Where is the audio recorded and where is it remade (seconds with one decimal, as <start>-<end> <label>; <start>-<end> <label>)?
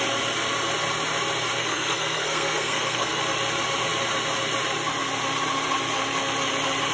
0.0-1.6 recorded; 1.6-3.2 remade; 3.2-6.9 recorded